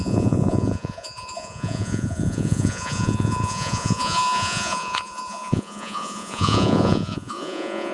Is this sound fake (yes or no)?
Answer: yes